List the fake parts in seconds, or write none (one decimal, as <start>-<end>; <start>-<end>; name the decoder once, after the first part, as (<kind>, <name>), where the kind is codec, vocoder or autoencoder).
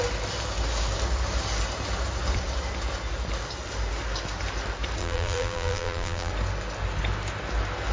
5.0-6.3 (vocoder, BigVGAN v2)